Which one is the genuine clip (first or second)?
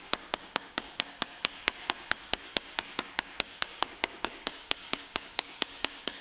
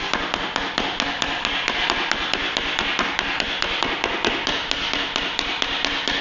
second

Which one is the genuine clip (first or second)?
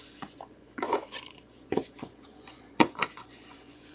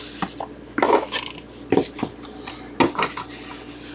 second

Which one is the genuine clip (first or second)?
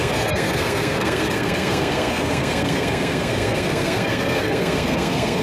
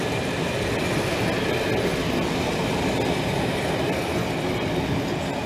second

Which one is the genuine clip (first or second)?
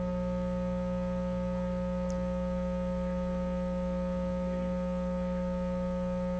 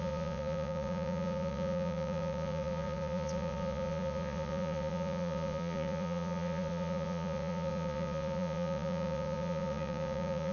first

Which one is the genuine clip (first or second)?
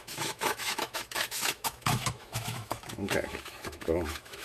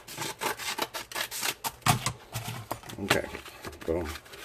second